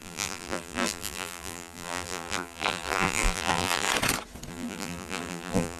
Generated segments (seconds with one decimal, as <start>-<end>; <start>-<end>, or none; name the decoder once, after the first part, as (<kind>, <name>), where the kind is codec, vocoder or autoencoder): 0.0-3.9 (vocoder, BigVGAN v2); 4.5-5.8